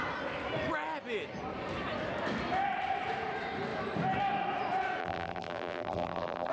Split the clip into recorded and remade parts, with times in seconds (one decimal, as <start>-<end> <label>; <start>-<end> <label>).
0.0-5.0 recorded; 5.0-6.5 remade